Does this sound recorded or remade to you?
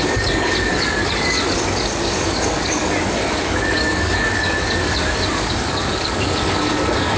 remade